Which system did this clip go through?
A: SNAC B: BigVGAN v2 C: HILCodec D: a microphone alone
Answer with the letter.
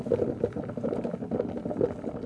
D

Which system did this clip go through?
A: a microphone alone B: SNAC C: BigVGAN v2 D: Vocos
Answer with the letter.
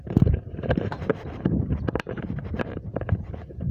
C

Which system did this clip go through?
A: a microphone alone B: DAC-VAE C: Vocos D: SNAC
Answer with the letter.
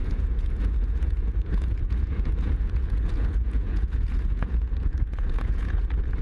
C